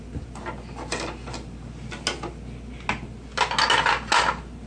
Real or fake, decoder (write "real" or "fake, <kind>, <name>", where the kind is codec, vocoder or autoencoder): real